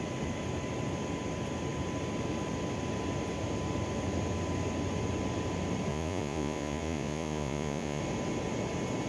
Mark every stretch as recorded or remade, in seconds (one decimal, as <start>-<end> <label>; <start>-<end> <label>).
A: 0.0-5.9 recorded; 5.9-8.0 remade; 8.0-9.1 recorded